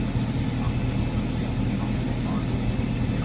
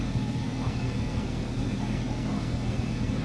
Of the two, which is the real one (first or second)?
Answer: first